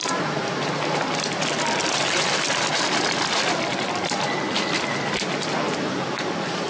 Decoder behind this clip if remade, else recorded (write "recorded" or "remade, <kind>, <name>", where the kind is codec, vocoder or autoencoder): recorded